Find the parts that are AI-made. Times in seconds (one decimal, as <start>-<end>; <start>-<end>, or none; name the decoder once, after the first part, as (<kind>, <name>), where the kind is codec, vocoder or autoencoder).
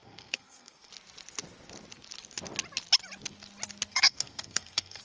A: 0.0-0.9 (codec, SNAC); 3.9-5.0